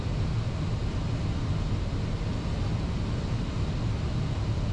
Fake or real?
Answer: real